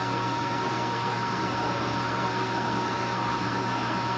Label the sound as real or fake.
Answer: fake